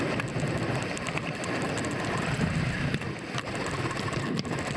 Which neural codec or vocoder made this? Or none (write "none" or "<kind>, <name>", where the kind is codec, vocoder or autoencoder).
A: none